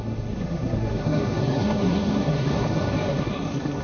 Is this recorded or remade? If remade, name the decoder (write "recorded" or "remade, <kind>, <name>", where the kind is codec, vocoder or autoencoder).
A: remade, codec, SNAC